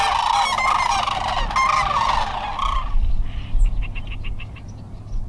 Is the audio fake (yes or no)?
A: no